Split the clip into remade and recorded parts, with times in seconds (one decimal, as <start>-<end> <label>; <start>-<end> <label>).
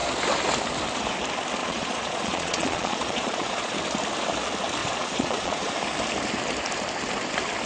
0.0-1.6 recorded; 1.6-3.8 remade; 3.8-4.8 recorded; 4.8-5.7 remade; 5.7-7.7 recorded